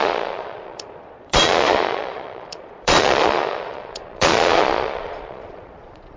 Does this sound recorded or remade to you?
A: remade